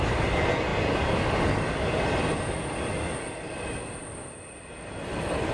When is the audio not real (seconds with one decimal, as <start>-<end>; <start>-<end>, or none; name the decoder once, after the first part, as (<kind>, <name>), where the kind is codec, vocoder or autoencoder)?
none